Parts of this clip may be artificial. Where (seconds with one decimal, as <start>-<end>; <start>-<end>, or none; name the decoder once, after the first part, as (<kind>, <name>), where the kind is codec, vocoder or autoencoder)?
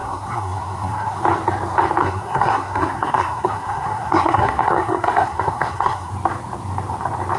0.0-1.2 (codec, SNAC); 2.0-6.1